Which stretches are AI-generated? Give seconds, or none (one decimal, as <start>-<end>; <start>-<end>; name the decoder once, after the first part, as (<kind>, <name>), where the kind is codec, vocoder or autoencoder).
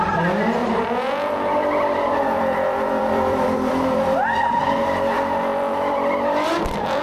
0.6-4.5 (vocoder, BigVGAN v2); 5.5-7.0